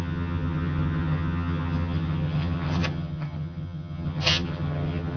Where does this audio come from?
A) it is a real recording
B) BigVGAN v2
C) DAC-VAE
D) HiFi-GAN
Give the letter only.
D